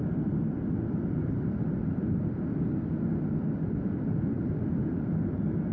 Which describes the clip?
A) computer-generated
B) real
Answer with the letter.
B